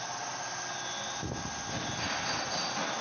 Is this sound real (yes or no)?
yes